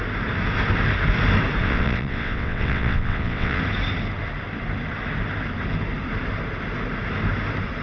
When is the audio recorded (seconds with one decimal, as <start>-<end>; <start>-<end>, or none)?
0.0-1.6; 3.6-7.8